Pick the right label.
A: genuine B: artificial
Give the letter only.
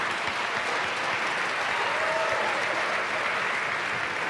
A